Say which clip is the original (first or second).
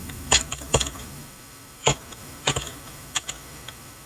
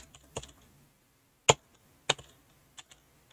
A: second